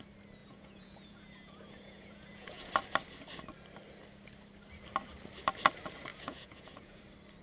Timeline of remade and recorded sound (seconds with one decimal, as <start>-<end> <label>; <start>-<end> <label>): 0.0-0.4 recorded; 0.4-2.7 remade; 2.7-6.1 recorded; 6.1-7.0 remade; 7.0-7.4 recorded

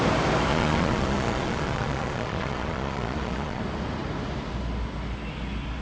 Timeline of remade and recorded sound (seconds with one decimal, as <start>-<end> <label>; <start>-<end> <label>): 0.0-0.5 recorded; 0.5-3.6 remade; 3.6-5.8 recorded

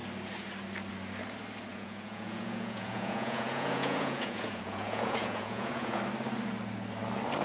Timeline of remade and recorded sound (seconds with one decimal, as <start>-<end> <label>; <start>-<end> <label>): 0.0-1.7 recorded; 1.7-6.0 remade; 6.0-7.4 recorded